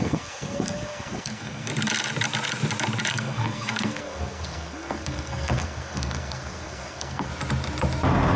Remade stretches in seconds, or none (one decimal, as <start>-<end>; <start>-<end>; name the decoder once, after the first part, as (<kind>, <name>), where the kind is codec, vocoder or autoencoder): 0.0-1.7 (codec, SNAC); 3.1-7.3